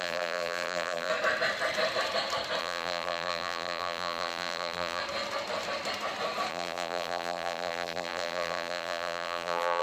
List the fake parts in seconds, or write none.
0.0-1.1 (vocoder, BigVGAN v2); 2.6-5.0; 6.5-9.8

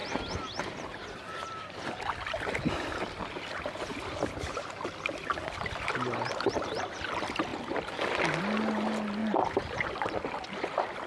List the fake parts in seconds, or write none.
0.0-2.0 (vocoder, BigVGAN v2); 9.2-9.9